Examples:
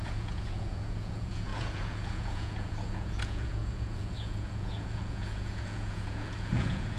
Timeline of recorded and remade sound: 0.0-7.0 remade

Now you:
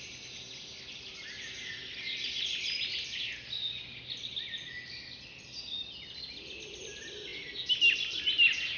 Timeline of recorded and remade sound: 0.0-8.8 recorded

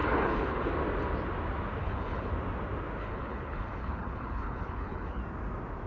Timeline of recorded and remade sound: 0.0-0.7 remade; 0.7-1.8 recorded; 1.8-2.3 remade; 2.3-3.0 recorded; 3.0-5.2 remade; 5.2-5.9 recorded

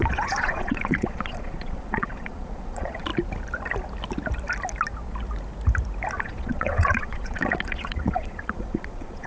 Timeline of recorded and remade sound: 0.0-3.1 remade; 3.1-6.2 recorded; 6.2-9.3 remade

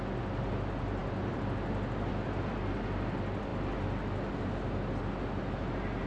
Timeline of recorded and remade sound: 0.0-6.1 recorded

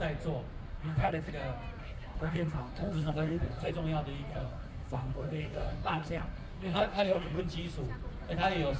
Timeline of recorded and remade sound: 0.0-0.7 recorded; 0.7-1.3 remade; 1.3-1.8 recorded; 1.8-3.7 remade; 3.7-4.3 recorded; 4.3-7.4 remade; 7.4-8.8 recorded

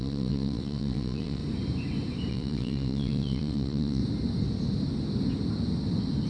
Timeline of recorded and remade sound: 0.0-1.4 remade; 1.4-2.3 recorded; 2.3-4.0 remade; 4.0-6.3 recorded